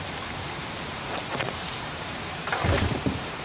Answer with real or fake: fake